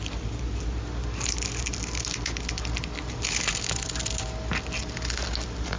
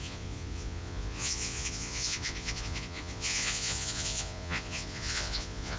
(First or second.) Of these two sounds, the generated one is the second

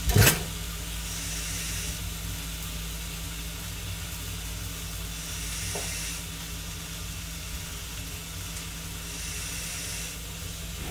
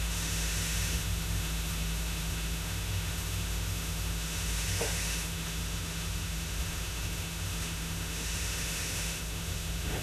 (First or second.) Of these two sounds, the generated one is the second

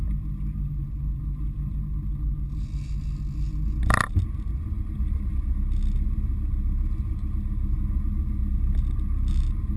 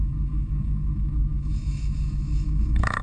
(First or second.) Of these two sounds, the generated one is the second